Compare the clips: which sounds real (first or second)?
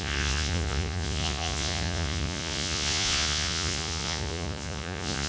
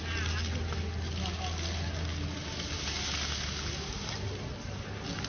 second